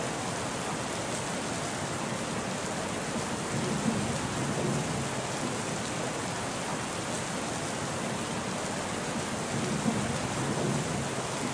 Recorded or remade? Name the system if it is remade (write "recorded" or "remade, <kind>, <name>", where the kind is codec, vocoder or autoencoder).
recorded